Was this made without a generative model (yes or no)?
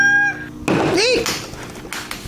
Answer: yes